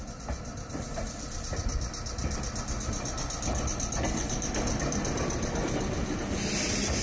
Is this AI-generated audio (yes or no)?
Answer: no